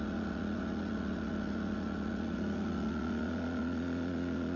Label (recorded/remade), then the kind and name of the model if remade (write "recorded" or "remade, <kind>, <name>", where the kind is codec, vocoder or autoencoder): remade, vocoder, Vocos